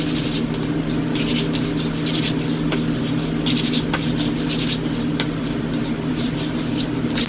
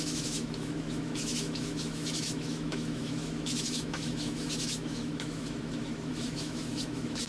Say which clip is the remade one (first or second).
second